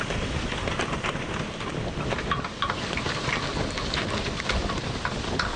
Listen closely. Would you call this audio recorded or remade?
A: recorded